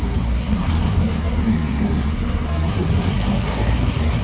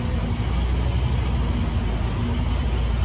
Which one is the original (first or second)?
second